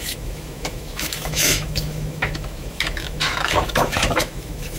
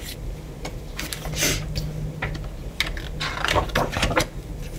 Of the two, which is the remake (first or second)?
first